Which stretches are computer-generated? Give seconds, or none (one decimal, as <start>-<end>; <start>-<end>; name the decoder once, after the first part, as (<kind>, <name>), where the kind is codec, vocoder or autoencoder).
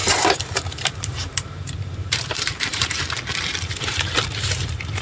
0.0-3.0 (vocoder, BigVGAN v2)